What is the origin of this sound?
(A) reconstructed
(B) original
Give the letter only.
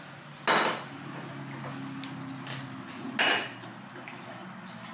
B